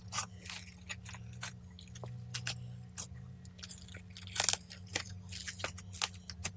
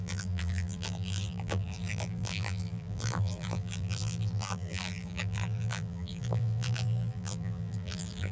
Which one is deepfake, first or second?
second